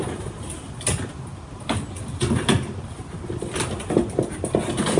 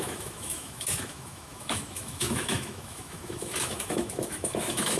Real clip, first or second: first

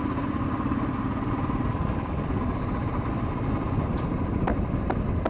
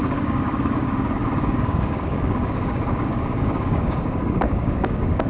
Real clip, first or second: first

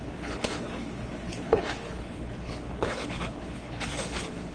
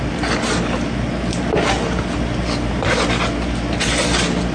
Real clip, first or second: second